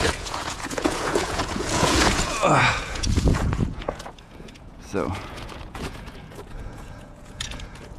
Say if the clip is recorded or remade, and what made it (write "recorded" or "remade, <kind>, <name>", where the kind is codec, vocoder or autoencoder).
remade, vocoder, Vocos